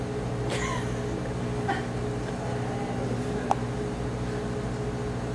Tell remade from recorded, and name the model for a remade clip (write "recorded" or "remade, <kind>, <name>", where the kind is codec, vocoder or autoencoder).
recorded